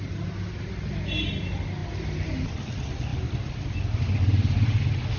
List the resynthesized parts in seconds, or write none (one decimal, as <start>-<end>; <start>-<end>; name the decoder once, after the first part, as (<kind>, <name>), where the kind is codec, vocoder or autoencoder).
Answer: none

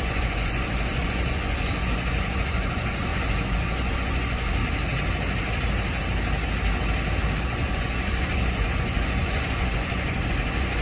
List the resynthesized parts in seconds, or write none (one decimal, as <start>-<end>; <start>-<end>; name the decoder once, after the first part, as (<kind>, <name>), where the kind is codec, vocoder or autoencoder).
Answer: 0.0-4.6 (vocoder, Vocos); 7.4-10.8

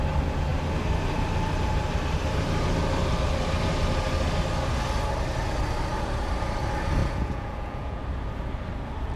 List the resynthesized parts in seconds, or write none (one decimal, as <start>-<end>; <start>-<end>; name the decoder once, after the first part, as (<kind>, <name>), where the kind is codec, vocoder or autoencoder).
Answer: 7.0-8.0 (vocoder, Vocos)

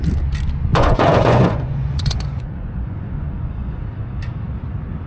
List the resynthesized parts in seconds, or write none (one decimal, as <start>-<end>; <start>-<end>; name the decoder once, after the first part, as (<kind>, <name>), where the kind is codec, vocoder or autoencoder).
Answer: 0.7-3.8 (vocoder, Vocos)

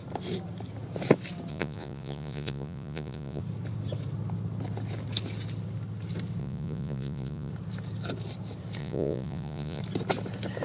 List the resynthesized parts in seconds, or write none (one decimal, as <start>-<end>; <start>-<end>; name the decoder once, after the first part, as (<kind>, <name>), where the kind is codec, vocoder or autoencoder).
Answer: 1.5-3.4 (vocoder, Vocos); 6.4-7.5; 8.8-9.8

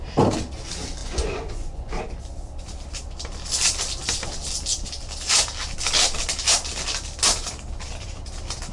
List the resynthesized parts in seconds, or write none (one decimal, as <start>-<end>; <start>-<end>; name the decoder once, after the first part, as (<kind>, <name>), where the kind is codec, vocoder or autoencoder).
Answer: 1.0-2.0 (vocoder, Vocos)

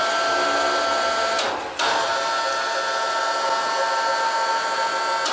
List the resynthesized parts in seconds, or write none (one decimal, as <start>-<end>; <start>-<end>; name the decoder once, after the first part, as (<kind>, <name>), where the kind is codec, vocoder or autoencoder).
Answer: none

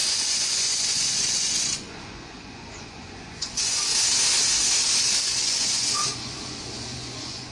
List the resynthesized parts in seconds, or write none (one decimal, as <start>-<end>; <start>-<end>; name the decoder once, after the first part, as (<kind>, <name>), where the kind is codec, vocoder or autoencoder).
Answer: 0.0-3.9 (vocoder, Vocos); 5.2-7.5